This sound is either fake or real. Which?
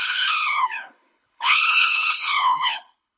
fake